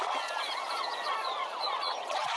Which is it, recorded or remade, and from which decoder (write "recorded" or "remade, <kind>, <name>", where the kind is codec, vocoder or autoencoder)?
remade, vocoder, Vocos